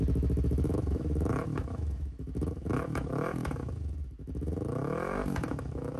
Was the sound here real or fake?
fake